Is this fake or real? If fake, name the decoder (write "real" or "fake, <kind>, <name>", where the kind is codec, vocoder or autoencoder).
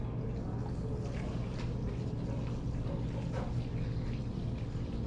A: real